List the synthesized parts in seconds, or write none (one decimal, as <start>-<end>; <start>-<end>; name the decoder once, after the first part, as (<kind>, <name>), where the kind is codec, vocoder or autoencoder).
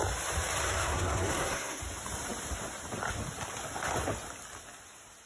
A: 0.6-1.8 (codec, SNAC)